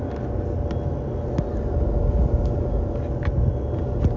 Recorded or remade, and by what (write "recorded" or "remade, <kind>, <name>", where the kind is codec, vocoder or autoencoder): recorded